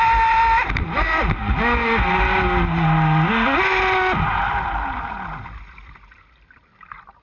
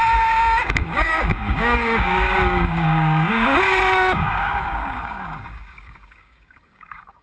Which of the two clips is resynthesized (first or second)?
second